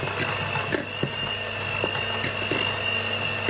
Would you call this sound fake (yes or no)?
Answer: no